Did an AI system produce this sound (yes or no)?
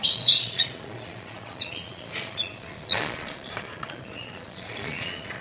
yes